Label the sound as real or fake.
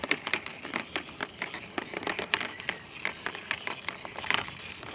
real